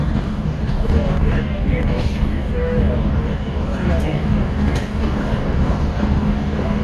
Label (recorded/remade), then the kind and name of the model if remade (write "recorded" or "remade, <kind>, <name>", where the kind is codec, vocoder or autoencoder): remade, codec, DAC